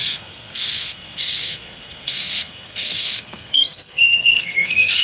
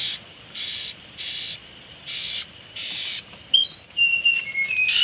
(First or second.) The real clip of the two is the second